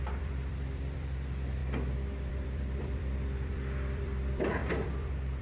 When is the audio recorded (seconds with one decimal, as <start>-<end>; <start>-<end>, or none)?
1.6-2.3